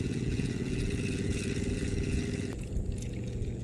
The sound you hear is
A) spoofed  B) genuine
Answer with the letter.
A